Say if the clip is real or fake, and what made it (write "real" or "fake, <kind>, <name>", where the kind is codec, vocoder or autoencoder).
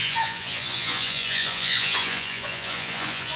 fake, vocoder, Vocos